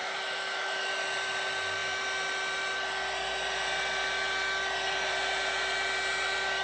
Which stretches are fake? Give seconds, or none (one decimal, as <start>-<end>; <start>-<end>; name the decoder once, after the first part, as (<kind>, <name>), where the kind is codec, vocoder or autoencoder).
0.0-0.9 (autoencoder, DAC-VAE)